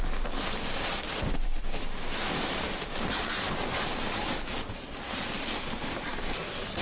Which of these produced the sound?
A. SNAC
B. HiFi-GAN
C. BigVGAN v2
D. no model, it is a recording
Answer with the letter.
D